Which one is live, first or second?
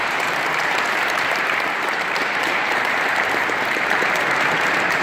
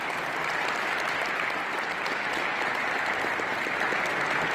second